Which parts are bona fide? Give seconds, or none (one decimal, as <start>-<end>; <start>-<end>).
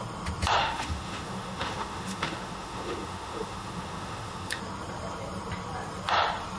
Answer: 0.0-0.6; 4.6-6.6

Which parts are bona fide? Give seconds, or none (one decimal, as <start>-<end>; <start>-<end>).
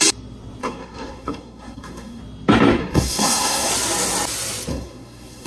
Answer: 0.0-0.6; 2.2-2.8; 3.7-4.7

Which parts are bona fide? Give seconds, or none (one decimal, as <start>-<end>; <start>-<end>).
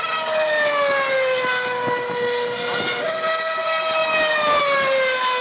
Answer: 0.0-5.4